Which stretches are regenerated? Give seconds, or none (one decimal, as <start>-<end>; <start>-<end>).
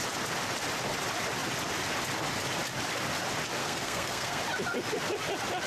3.6-4.4